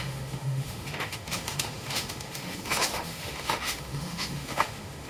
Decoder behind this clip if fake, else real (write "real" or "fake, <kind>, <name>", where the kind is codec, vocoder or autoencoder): fake, autoencoder, DAC-VAE